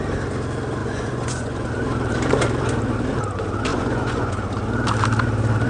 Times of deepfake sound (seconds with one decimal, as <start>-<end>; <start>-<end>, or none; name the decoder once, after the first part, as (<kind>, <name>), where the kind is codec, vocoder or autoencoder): 0.8-1.7 (vocoder, Vocos); 3.7-4.3